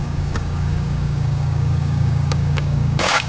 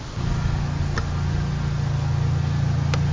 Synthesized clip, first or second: first